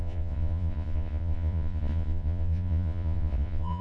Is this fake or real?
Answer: fake